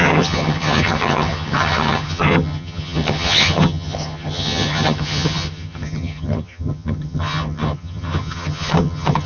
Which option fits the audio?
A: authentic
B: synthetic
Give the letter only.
B